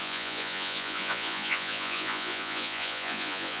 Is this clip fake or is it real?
fake